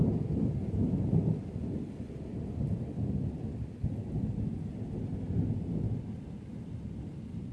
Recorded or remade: recorded